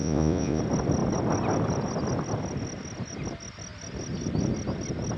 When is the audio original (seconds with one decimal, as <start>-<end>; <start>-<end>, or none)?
0.6-5.2